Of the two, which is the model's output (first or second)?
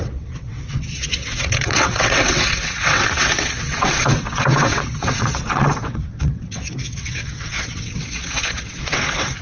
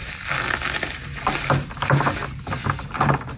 first